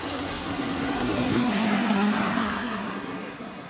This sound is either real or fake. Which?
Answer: fake